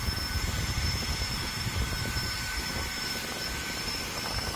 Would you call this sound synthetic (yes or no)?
yes